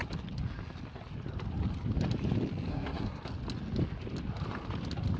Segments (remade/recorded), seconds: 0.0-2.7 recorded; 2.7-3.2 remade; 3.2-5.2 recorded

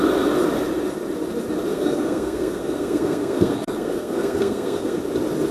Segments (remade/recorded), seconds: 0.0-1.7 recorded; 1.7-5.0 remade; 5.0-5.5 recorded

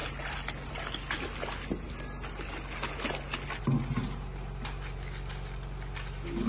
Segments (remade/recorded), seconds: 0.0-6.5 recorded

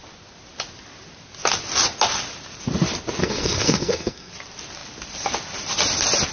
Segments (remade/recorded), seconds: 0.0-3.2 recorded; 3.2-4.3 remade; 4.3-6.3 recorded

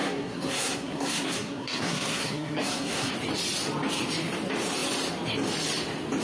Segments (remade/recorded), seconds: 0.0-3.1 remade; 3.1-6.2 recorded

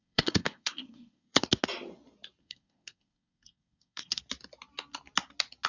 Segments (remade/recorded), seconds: 0.0-1.4 remade; 1.4-2.4 recorded; 2.4-4.2 remade; 4.2-5.7 recorded